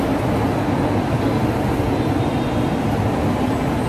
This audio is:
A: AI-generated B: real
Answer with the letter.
B